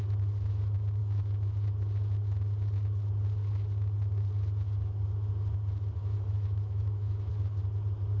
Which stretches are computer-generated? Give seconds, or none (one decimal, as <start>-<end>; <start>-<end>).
6.0-7.3